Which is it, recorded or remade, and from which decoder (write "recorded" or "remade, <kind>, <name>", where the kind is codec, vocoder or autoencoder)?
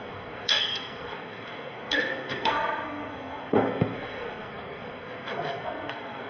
remade, codec, SNAC